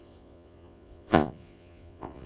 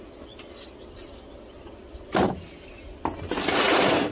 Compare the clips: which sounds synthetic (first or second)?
first